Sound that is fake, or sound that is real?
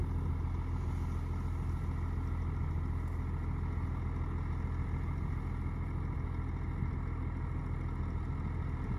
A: real